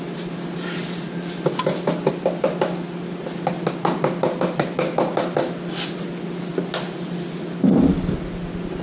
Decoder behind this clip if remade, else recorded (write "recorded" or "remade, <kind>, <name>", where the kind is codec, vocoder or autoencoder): recorded